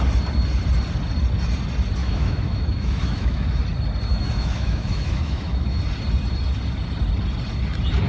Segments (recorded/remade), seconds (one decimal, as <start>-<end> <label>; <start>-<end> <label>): 0.0-2.0 recorded; 2.0-3.6 remade; 3.6-4.1 recorded; 4.1-5.8 remade; 5.8-8.1 recorded